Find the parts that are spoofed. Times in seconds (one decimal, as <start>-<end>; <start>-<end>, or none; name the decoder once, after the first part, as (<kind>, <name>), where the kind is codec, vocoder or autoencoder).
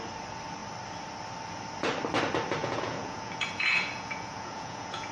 2.6-5.1 (vocoder, Vocos)